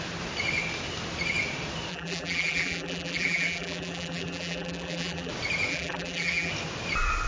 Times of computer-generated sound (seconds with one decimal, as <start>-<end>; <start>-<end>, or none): 1.9-5.3; 5.7-6.5